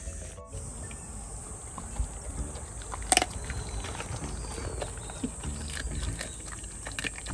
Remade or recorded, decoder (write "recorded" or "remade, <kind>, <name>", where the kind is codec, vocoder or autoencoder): recorded